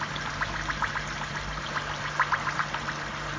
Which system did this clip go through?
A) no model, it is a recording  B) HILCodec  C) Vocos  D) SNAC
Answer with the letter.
A